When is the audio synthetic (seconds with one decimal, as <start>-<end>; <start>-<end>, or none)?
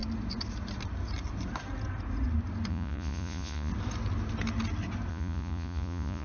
2.7-3.7; 5.1-6.2